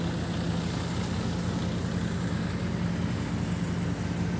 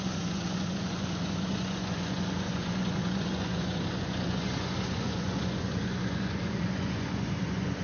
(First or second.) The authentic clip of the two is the first